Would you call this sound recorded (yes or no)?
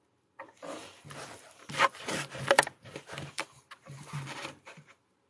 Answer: no